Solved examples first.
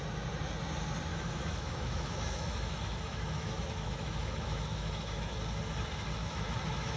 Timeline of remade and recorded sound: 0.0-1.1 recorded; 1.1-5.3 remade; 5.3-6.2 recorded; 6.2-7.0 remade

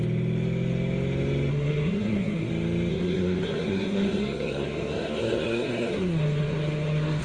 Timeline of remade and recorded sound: 0.0-1.5 recorded; 1.5-2.5 remade; 2.5-2.9 recorded; 2.9-7.2 remade

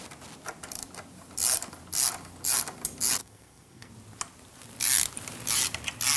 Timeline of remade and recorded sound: 0.0-3.2 recorded; 3.2-3.9 remade; 3.9-6.2 recorded

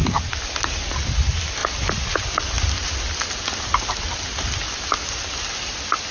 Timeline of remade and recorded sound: 0.0-6.1 recorded

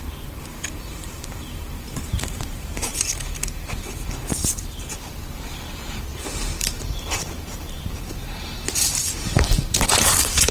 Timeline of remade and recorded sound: 0.0-10.5 remade

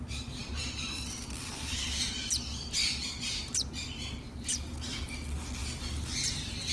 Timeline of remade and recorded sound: 0.0-0.4 recorded; 0.4-4.0 remade; 4.0-6.7 recorded

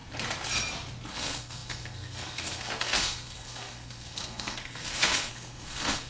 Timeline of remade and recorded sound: 0.0-1.1 recorded; 1.1-6.1 remade